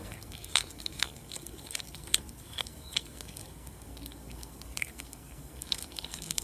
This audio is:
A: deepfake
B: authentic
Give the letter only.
A